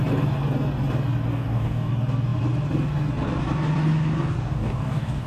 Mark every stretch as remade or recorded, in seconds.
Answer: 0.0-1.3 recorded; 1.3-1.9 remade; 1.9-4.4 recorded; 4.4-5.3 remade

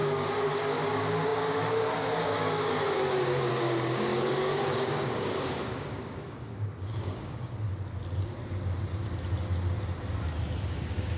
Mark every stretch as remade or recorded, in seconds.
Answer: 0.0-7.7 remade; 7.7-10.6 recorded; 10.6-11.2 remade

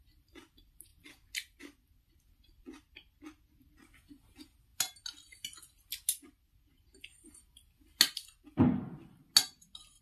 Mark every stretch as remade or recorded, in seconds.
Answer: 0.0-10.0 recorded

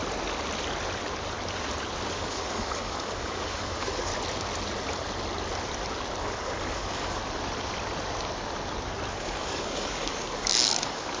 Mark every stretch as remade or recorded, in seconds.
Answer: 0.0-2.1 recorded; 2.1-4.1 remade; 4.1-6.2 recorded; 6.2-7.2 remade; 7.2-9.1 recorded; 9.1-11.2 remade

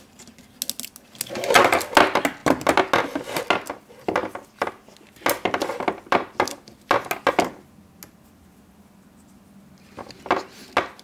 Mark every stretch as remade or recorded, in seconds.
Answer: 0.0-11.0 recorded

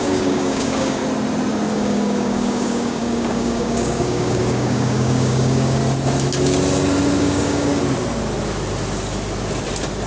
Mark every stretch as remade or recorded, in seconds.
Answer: 0.0-1.0 remade; 1.0-1.7 recorded; 1.7-5.8 remade; 5.8-7.2 recorded; 7.2-7.7 remade; 7.7-10.1 recorded

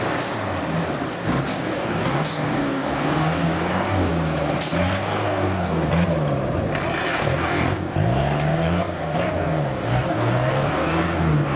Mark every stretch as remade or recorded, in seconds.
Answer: 0.0-1.5 recorded; 1.5-4.1 remade; 4.1-4.8 recorded; 4.8-5.9 remade; 5.9-7.1 recorded; 7.1-11.6 remade

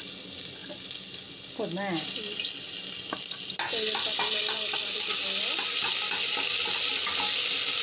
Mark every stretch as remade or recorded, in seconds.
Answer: 0.0-7.8 recorded